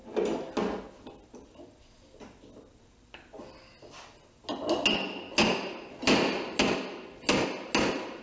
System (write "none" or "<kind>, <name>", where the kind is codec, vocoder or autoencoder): none